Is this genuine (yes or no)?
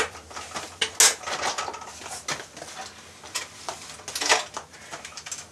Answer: yes